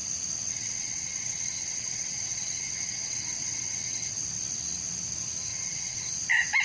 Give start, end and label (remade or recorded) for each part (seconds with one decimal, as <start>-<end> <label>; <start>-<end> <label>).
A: 0.0-0.5 recorded; 0.5-4.1 remade; 4.1-5.5 recorded; 5.5-6.1 remade; 6.1-6.6 recorded